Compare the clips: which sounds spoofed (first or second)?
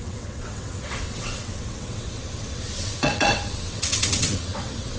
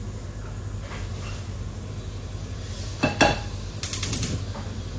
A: first